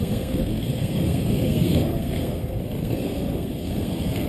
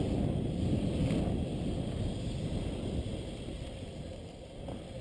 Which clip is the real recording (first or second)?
second